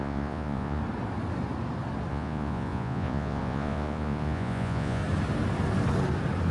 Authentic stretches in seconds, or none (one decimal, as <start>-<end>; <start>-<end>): 0.8-2.1; 5.0-6.5